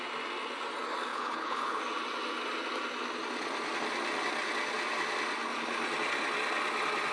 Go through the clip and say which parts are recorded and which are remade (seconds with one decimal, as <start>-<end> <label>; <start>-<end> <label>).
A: 0.0-1.1 recorded; 1.1-1.8 remade; 1.8-7.1 recorded